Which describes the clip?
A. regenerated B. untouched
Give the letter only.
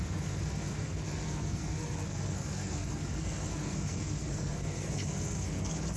A